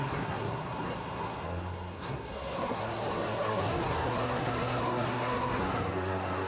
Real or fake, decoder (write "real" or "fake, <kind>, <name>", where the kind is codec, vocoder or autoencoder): fake, codec, SNAC